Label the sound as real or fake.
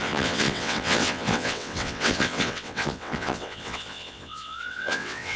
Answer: fake